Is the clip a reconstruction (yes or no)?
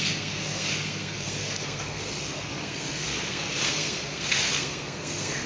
yes